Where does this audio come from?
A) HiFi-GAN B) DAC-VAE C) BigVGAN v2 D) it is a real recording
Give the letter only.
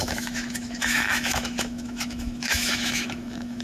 B